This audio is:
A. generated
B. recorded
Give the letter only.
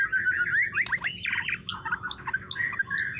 B